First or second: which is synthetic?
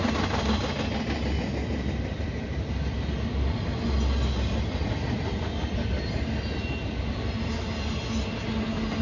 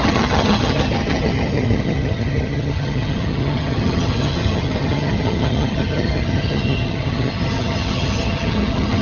second